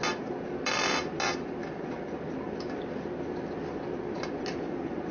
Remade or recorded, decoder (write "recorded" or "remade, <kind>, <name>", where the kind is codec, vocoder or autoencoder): recorded